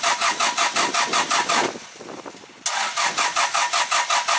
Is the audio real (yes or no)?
yes